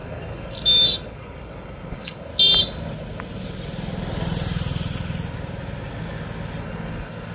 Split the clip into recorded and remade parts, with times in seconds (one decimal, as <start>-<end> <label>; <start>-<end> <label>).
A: 0.0-2.3 remade; 2.3-6.6 recorded; 6.6-7.3 remade